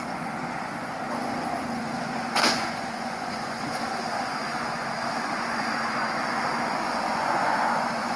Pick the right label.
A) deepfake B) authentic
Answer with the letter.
A